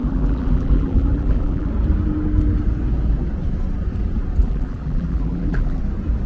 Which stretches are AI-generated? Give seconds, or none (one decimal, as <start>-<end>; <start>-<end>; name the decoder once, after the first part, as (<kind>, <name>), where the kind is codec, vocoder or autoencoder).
0.0-1.7 (vocoder, BigVGAN v2); 4.4-5.8